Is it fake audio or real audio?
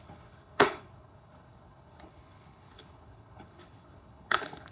fake